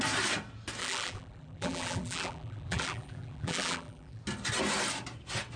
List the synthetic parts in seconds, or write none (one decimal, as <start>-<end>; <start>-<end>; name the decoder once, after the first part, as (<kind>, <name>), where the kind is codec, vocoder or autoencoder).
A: 0.8-4.2 (vocoder, BigVGAN v2)

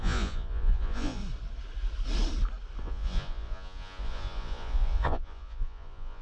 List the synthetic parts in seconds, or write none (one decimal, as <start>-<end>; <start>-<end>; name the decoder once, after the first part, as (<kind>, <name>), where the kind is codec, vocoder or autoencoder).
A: 0.0-1.2 (vocoder, Vocos); 2.8-6.2

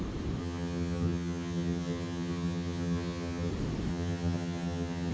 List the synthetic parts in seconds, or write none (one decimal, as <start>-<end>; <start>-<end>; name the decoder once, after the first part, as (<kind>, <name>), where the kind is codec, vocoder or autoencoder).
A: 0.4-3.5 (vocoder, HiFi-GAN); 3.9-5.1

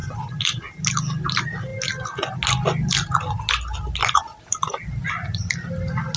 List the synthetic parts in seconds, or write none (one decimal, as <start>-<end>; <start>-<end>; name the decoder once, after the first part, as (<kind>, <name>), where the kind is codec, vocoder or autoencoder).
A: 0.0-0.6 (vocoder, BigVGAN v2); 4.0-5.0

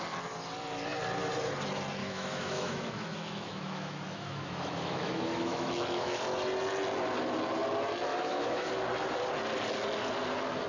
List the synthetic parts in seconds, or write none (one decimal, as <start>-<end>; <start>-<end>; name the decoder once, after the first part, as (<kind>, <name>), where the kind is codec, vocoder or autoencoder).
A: 2.0-6.2 (autoencoder, DAC-VAE); 8.1-8.7